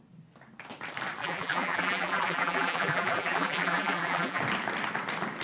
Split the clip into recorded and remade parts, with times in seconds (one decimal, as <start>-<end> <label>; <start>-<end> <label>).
0.0-1.2 recorded; 1.2-4.4 remade; 4.4-5.4 recorded